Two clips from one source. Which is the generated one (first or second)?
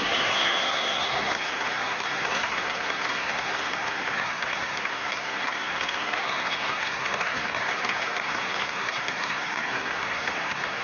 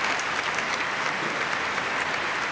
first